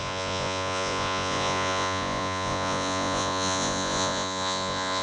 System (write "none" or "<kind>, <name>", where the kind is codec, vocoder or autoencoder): vocoder, Vocos